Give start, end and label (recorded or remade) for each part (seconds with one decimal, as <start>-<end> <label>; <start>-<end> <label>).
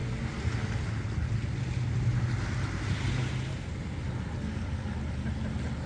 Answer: 0.0-5.9 recorded